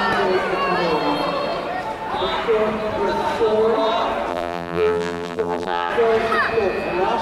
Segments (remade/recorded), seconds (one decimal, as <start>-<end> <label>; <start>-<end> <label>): 0.0-4.3 recorded; 4.3-5.9 remade; 5.9-7.2 recorded